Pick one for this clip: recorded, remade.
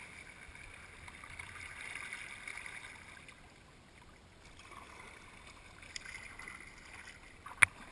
recorded